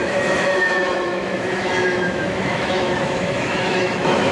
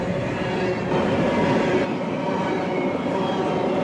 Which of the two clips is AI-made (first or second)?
first